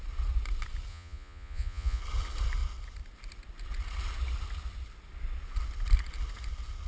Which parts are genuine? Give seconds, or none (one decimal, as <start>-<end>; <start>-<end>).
0.0-0.9; 2.0-6.9